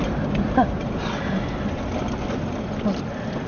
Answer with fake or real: real